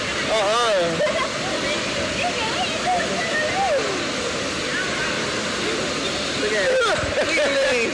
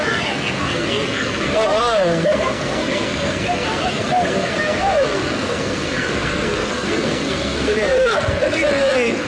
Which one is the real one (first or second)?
first